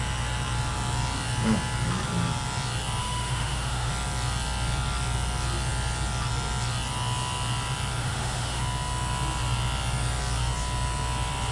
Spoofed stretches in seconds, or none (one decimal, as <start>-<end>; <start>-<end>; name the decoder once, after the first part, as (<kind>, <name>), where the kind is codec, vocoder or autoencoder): 3.0-3.9 (autoencoder, DAC-VAE); 8.0-8.6